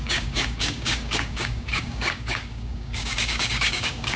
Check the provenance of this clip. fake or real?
fake